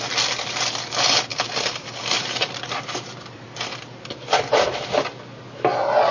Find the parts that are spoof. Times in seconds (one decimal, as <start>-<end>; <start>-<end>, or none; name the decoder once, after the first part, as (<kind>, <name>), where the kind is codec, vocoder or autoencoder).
1.3-5.0 (vocoder, BigVGAN v2)